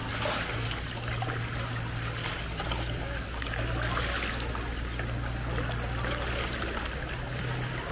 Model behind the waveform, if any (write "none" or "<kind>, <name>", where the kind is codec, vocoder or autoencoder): none